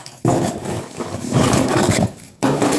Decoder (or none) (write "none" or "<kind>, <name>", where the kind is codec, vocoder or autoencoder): codec, DAC